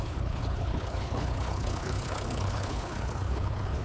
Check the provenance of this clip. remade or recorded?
remade